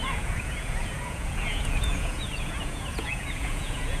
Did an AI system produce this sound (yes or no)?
yes